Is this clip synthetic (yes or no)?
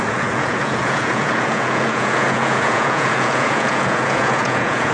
yes